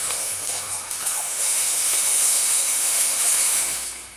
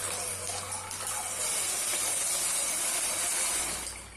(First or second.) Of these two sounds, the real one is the second